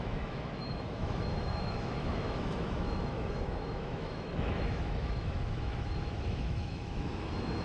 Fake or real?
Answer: fake